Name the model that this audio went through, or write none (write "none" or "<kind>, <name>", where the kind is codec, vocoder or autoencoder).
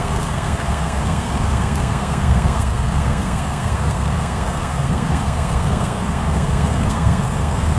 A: codec, SNAC